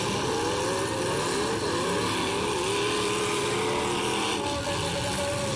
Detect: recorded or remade recorded